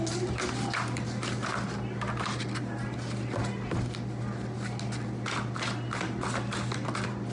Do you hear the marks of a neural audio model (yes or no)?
no